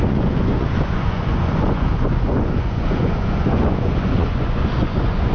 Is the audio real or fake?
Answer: fake